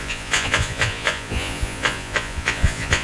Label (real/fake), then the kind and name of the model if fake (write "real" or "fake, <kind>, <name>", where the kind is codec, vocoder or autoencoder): fake, vocoder, Vocos